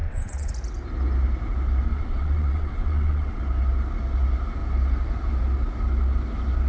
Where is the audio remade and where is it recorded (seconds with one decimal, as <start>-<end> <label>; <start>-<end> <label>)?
0.0-0.5 remade; 0.5-1.9 recorded; 1.9-3.4 remade; 3.4-6.7 recorded